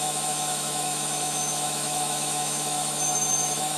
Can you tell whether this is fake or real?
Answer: fake